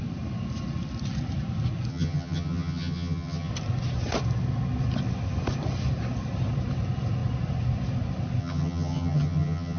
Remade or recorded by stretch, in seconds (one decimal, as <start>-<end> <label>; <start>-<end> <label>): 0.0-1.9 recorded; 1.9-3.5 remade; 3.5-8.4 recorded; 8.4-9.8 remade